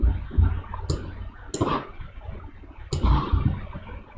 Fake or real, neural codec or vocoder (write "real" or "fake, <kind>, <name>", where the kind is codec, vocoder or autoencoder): real